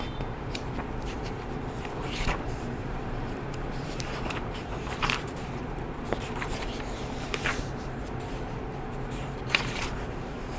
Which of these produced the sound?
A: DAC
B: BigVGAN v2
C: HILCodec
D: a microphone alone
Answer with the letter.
B